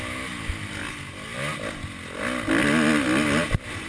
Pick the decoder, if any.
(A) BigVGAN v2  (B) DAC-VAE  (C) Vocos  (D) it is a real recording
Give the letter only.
D